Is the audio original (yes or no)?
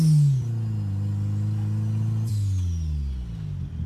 yes